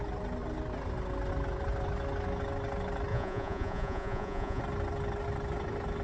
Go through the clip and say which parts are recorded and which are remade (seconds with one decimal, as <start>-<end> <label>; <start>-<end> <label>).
0.0-3.1 recorded; 3.1-4.6 remade; 4.6-6.0 recorded